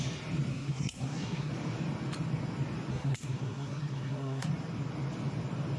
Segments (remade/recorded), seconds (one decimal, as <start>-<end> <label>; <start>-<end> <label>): 0.0-0.5 recorded; 0.5-1.5 remade; 1.5-2.9 recorded; 2.9-4.5 remade; 4.5-5.8 recorded